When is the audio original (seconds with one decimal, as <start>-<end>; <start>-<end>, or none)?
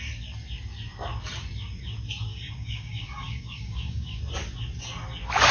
0.0-2.3; 4.2-5.5